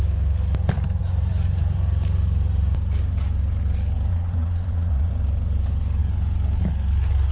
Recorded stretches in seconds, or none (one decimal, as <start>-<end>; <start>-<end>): 0.0-4.1; 5.1-7.3